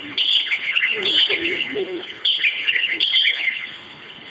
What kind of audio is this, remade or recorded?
remade